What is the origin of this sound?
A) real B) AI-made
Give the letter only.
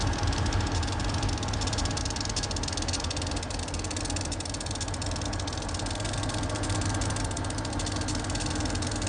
A